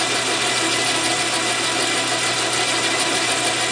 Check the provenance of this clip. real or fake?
real